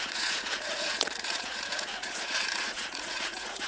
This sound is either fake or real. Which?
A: fake